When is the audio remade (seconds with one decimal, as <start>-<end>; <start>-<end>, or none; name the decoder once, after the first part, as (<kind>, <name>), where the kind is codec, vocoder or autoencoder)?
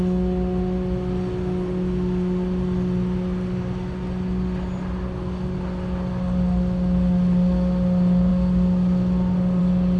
none